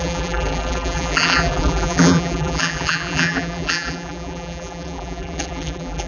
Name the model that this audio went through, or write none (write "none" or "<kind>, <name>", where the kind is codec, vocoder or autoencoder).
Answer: vocoder, BigVGAN v2